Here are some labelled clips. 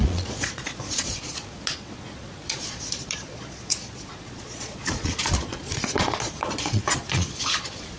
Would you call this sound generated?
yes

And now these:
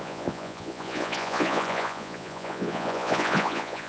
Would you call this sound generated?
yes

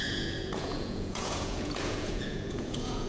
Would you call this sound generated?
yes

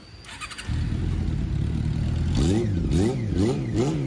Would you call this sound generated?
no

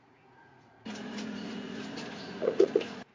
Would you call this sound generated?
yes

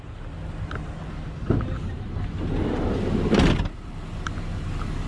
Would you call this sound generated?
no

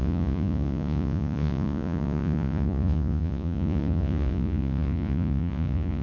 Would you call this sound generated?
yes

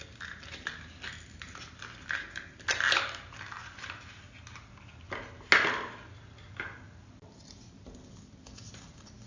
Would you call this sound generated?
no